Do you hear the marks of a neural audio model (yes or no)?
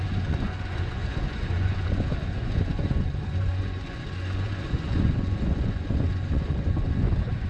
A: yes